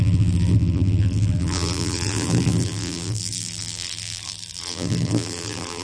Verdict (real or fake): fake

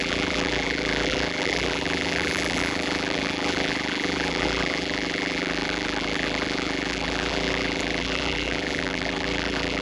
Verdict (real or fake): fake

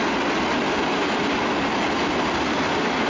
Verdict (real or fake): real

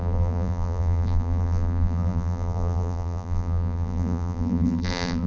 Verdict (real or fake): fake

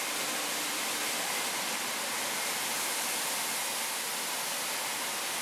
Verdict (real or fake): fake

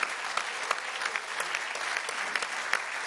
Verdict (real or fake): real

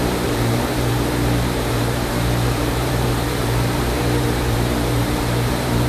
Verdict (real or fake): fake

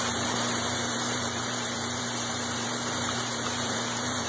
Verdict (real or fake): fake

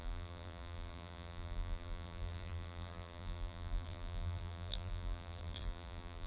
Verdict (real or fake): fake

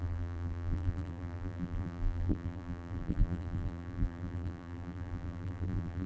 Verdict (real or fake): fake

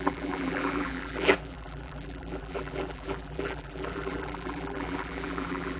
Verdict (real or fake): fake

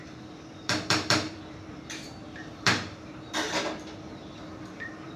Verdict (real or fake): fake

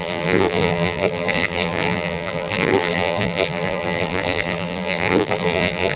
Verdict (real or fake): fake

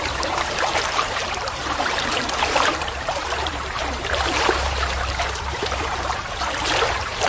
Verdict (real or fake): fake